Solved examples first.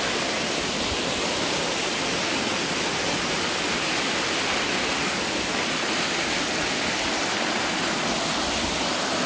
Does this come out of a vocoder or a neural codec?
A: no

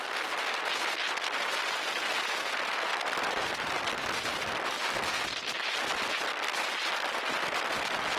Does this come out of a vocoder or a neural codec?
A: no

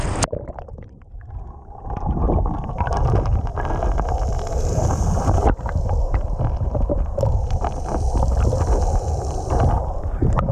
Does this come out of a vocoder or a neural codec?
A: no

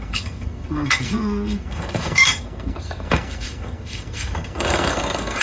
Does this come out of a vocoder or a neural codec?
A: yes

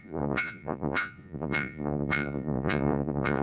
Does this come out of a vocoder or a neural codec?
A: yes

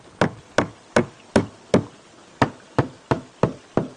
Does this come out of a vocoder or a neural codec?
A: no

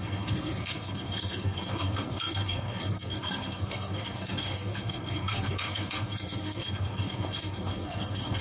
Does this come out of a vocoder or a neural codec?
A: yes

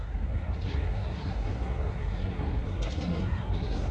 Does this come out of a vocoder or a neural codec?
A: yes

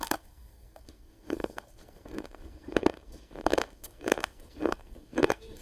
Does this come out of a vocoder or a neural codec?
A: yes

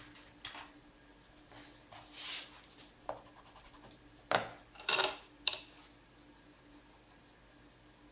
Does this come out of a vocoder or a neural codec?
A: no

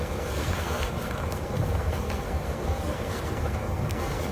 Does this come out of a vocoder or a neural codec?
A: yes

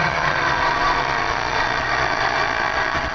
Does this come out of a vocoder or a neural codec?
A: yes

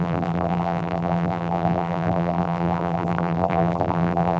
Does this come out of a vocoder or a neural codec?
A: yes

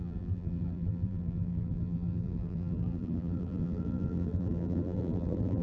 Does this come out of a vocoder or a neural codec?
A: yes